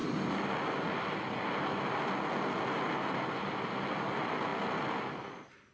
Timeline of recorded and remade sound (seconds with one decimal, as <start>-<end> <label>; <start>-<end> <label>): 0.0-5.7 recorded